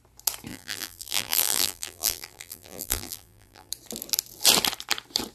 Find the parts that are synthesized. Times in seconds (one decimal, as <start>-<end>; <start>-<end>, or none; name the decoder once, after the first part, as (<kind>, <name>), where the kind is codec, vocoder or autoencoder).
0.5-3.7 (vocoder, BigVGAN v2)